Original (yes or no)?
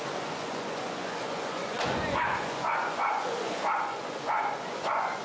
no